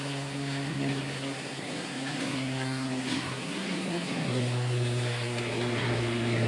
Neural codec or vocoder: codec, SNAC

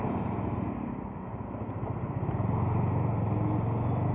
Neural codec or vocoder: none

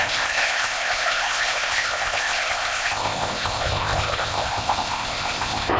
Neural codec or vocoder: codec, ZipCodec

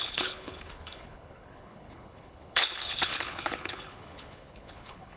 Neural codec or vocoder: codec, HILCodec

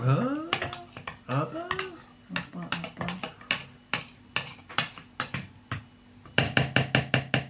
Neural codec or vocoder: none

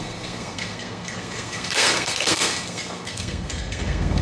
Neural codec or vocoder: codec, SNAC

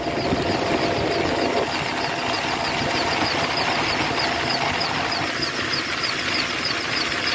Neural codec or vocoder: none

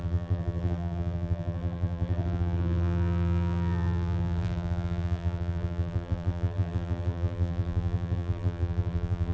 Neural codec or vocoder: vocoder, BigVGAN v2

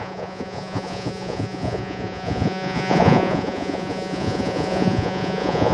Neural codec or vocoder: vocoder, Vocos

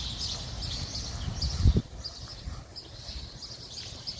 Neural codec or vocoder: none